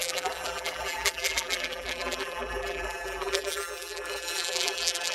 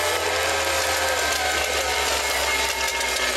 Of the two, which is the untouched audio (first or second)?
second